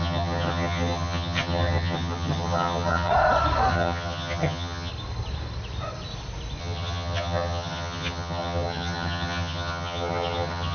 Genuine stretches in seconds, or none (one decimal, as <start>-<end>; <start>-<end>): 3.1-3.7; 4.9-6.6